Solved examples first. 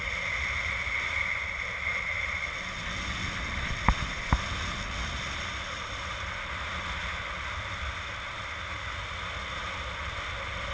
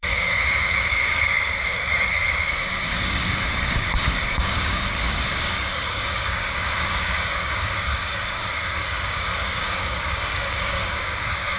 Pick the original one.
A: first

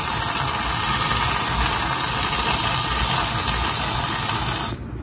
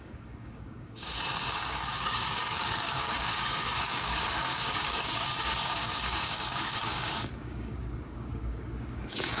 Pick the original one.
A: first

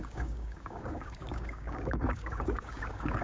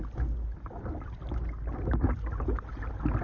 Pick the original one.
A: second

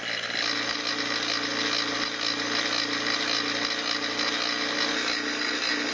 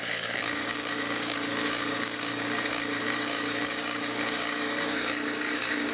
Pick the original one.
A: first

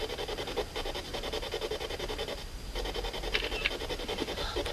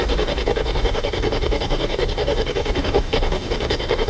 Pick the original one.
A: first